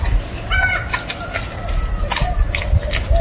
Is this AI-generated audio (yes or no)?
no